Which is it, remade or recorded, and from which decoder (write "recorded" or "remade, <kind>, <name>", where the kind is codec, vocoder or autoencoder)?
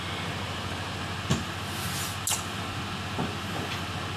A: recorded